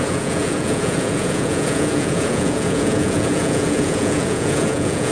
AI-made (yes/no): yes